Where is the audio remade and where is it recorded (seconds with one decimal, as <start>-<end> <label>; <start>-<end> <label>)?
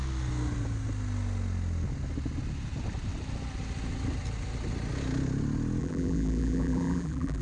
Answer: 0.0-5.8 recorded; 5.8-7.4 remade